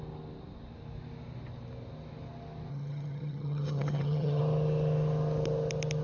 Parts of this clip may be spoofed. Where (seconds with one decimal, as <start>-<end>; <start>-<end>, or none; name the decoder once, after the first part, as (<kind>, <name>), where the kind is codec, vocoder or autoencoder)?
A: 2.7-4.4 (vocoder, HiFi-GAN)